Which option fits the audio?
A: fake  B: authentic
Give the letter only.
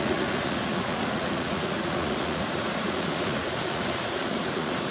A